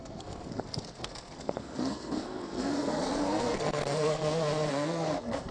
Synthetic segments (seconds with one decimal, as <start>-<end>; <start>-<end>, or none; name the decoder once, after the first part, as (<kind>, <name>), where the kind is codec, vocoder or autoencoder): 0.0-4.2 (codec, SNAC); 4.7-5.5